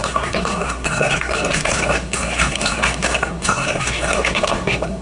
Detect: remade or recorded remade